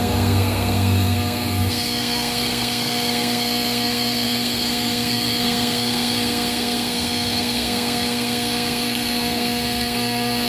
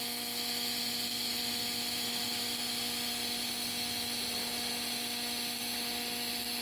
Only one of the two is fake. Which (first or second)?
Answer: first